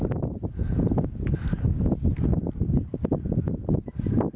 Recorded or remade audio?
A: recorded